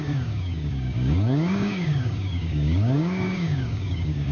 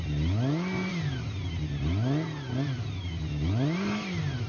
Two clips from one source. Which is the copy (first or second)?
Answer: first